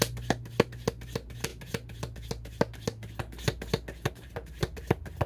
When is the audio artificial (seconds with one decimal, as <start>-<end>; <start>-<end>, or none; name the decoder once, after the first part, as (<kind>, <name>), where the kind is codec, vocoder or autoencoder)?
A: none

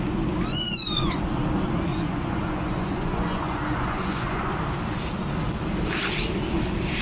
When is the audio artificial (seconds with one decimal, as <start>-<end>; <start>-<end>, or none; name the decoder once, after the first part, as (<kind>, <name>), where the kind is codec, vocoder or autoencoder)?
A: 0.5-1.2 (vocoder, Vocos); 1.9-4.5

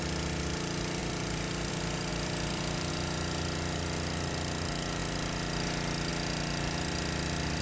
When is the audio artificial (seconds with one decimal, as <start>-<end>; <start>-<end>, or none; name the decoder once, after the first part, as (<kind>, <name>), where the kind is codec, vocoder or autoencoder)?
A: 1.0-1.7 (vocoder, BigVGAN v2); 2.1-2.9